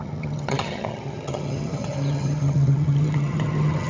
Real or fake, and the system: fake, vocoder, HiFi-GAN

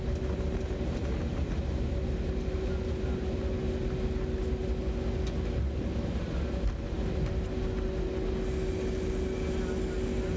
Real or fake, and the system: real